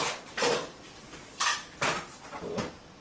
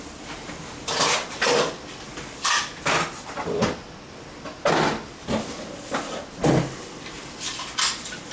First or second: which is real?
second